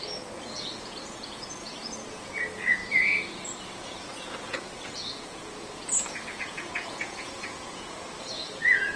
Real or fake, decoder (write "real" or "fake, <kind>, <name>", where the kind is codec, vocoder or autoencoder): fake, vocoder, Vocos